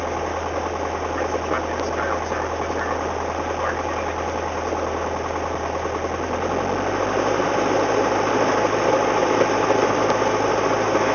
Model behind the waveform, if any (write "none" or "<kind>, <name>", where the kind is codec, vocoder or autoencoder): none